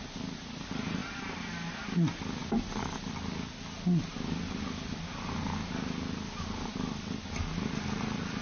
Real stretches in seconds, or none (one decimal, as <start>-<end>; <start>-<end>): 0.0-8.4